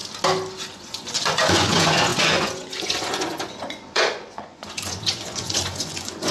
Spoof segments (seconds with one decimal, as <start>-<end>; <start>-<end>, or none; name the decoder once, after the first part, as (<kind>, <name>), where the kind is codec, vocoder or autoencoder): 0.7-6.3 (vocoder, Vocos)